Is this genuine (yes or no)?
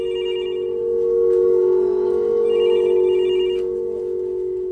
no